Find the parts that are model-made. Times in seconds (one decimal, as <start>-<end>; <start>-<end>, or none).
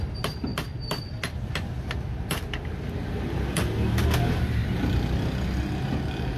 none